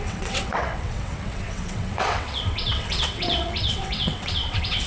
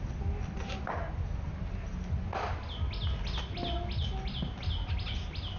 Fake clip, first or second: first